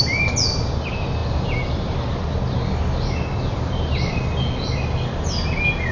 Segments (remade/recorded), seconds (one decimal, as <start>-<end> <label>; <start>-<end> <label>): 0.0-5.9 recorded